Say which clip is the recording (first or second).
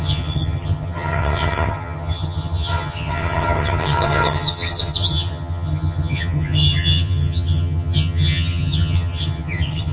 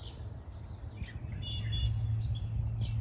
second